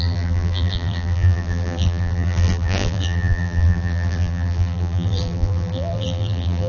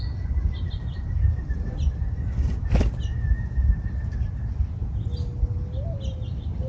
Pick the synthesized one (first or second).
first